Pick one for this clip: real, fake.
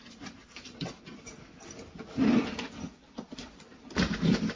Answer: real